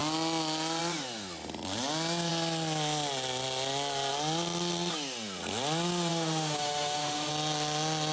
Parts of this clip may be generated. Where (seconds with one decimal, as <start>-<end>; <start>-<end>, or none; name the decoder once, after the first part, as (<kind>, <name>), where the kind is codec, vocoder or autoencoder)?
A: 6.1-7.3 (autoencoder, DAC-VAE)